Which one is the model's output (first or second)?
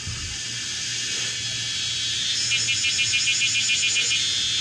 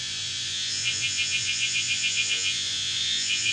second